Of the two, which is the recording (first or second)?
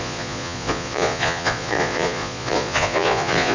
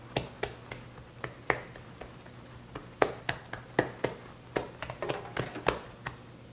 second